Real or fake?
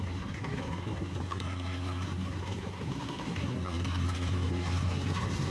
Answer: fake